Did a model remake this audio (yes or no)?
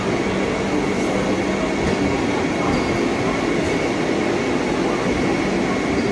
no